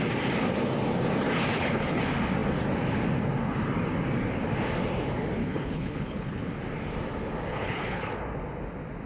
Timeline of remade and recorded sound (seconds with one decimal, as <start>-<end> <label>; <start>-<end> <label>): 0.0-1.5 recorded; 1.5-2.0 remade; 2.0-5.4 recorded; 5.4-6.4 remade; 6.4-7.5 recorded; 7.5-8.1 remade; 8.1-9.1 recorded